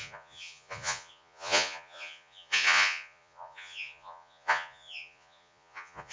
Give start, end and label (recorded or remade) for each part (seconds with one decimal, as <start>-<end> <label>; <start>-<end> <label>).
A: 0.0-6.1 remade